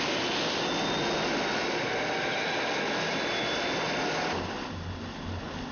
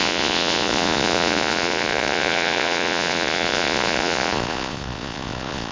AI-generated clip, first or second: second